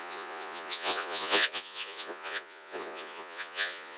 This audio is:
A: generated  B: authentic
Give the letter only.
A